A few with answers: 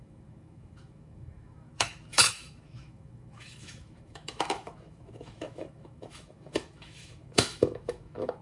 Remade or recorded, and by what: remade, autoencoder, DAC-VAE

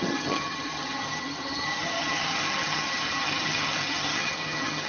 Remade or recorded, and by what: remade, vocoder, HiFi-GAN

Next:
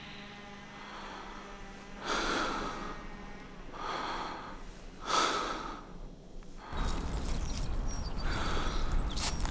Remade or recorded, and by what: recorded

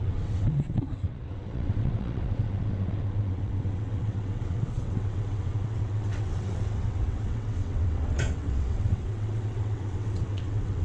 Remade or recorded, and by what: remade, vocoder, WaveNeXt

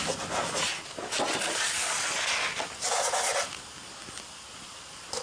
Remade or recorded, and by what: recorded